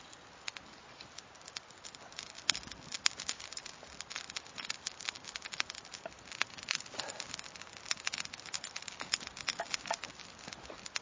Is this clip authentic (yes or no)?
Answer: yes